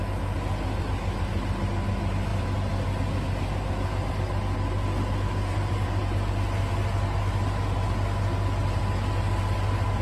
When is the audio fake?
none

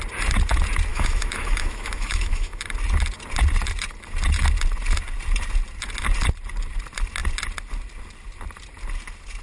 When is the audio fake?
0.9-2.6 (autoencoder, DAC-VAE)

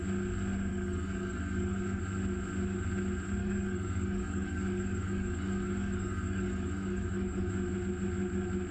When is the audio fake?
0.7-2.0 (codec, DAC); 3.4-7.5

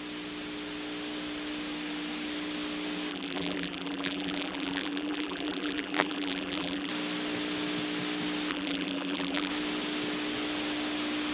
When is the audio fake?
3.1-6.9 (vocoder, BigVGAN v2); 8.5-9.5

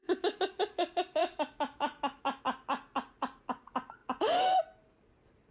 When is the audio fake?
1.2-2.4 (autoencoder, DAC-VAE)

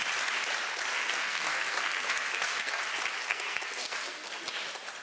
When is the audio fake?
0.9-2.9 (codec, SNAC); 3.3-4.4

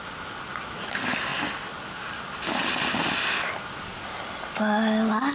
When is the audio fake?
none